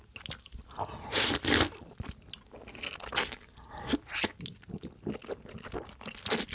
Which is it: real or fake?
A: real